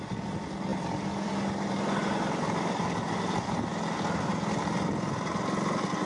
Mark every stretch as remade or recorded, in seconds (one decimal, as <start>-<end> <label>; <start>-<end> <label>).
0.0-0.7 recorded; 0.7-1.3 remade; 1.3-2.0 recorded; 2.0-2.8 remade; 2.8-6.1 recorded